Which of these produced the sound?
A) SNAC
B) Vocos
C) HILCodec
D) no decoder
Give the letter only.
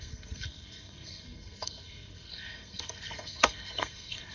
A